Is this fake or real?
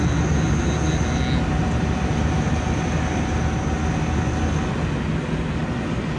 real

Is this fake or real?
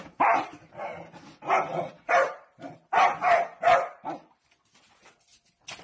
real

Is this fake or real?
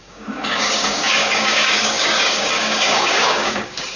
fake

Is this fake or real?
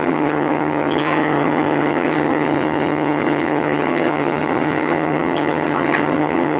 fake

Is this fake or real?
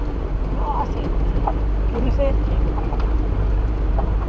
fake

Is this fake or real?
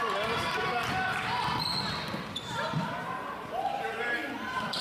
real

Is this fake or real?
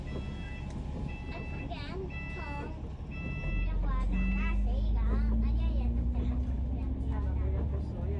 real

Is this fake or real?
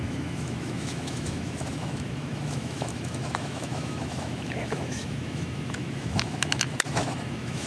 fake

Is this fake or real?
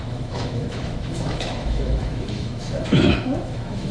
fake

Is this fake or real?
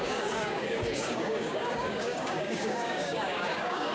fake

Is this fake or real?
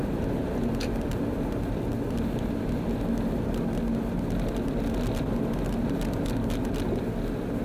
real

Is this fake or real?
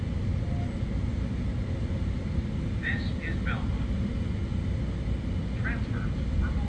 real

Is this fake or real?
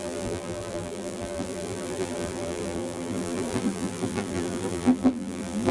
fake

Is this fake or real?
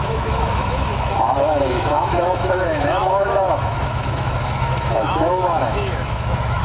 fake